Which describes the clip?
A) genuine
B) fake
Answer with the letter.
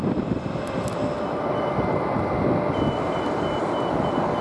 A